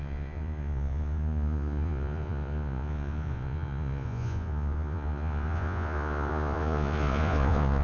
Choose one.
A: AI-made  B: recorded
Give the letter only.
A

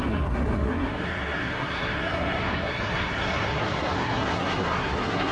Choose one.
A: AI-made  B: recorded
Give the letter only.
A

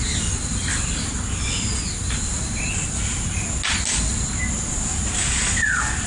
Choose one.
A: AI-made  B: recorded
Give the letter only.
B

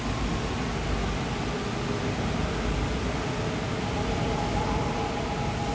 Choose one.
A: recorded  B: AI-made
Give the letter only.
A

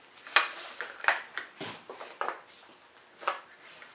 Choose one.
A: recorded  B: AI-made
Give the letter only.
A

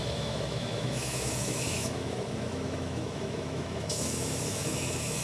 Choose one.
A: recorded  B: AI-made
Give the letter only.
B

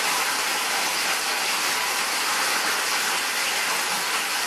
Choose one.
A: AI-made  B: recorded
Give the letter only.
B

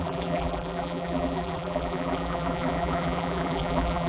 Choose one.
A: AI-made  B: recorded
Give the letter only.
A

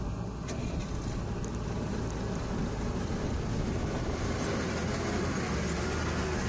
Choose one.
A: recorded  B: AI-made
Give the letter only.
A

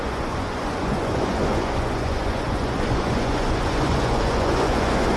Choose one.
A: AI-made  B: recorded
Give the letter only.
A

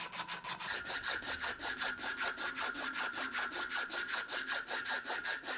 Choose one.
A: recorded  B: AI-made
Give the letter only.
A